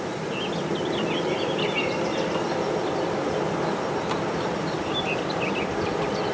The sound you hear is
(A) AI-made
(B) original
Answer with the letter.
B